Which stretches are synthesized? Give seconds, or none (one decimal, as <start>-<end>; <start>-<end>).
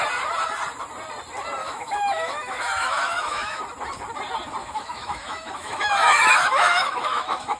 1.6-3.6; 4.6-7.6